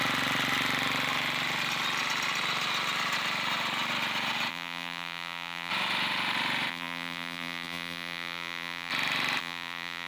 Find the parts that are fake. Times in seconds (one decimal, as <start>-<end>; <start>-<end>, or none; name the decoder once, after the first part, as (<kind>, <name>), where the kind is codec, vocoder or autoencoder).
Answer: 4.5-5.7 (vocoder, BigVGAN v2); 6.7-8.9; 9.4-10.1